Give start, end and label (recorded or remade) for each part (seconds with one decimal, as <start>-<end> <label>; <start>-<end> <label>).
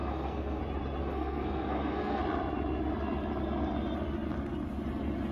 0.0-0.6 remade; 0.6-1.0 recorded; 1.0-2.2 remade; 2.2-5.3 recorded